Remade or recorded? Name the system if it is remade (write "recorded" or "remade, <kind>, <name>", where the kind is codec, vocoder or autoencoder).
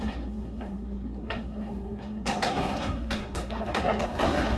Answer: remade, codec, SNAC